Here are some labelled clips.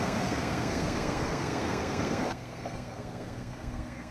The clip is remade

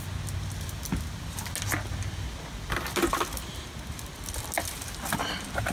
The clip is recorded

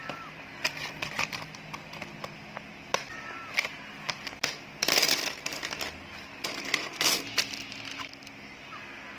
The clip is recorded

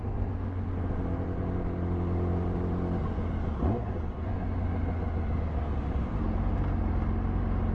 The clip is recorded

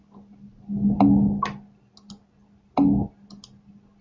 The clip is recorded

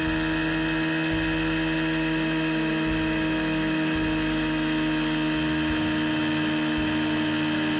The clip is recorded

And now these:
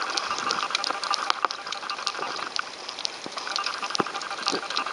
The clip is recorded